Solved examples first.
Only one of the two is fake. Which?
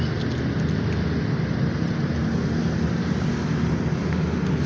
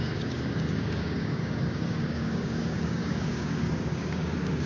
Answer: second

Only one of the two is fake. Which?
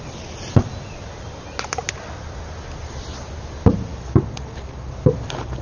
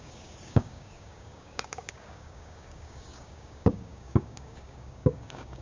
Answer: second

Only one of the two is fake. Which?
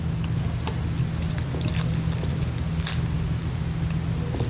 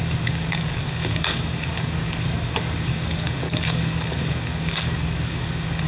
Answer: second